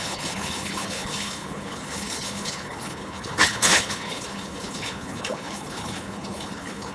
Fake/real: fake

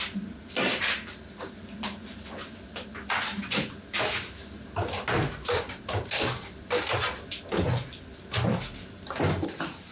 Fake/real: real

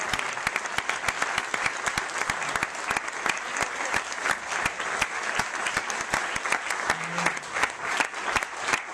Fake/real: real